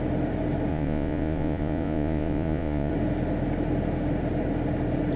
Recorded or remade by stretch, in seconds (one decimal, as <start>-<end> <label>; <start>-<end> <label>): 0.0-0.7 recorded; 0.7-2.9 remade; 2.9-5.2 recorded

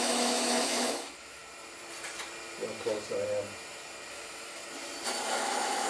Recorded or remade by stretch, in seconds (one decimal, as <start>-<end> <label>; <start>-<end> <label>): 0.0-1.4 remade; 1.4-4.1 recorded; 4.1-4.6 remade; 4.6-5.3 recorded; 5.3-5.9 remade

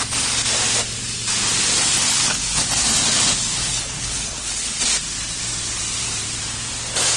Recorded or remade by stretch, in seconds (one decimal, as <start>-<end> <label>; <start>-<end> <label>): 0.0-1.9 recorded; 1.9-2.6 remade; 2.6-3.0 recorded; 3.0-4.8 remade; 4.8-7.2 recorded

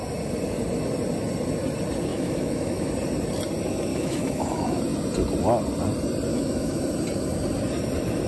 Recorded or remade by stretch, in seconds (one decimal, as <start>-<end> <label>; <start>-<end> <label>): 0.0-2.1 recorded; 2.1-2.9 remade; 2.9-3.9 recorded; 3.9-4.8 remade; 4.8-6.3 recorded; 6.3-6.8 remade; 6.8-8.3 recorded